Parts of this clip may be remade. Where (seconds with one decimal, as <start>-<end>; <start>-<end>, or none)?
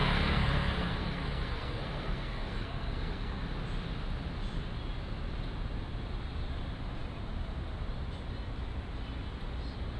0.0-3.4